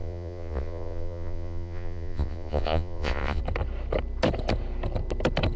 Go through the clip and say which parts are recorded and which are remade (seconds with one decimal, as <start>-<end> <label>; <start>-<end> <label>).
0.0-3.4 remade; 3.4-5.6 recorded